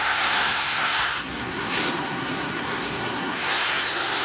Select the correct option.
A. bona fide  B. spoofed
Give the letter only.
B